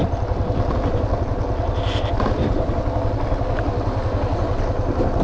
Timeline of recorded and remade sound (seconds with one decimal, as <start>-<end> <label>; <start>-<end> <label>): 0.0-0.7 remade; 0.7-5.2 recorded